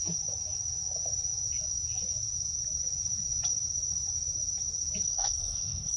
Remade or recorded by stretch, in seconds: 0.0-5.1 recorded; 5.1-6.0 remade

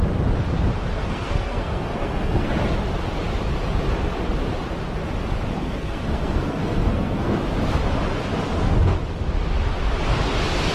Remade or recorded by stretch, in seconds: 0.0-0.9 recorded; 0.9-2.5 remade; 2.5-5.5 recorded; 5.5-7.4 remade; 7.4-10.7 recorded

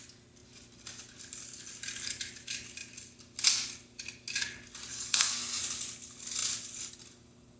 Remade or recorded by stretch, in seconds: 0.0-4.9 recorded; 4.9-5.6 remade; 5.6-7.6 recorded